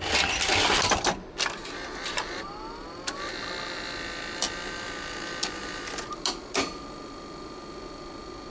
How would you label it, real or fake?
real